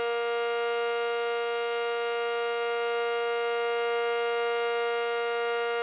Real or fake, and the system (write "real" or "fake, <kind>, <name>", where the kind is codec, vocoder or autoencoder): real